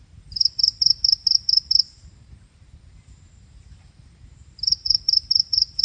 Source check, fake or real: fake